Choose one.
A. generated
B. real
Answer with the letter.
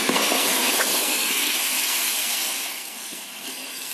A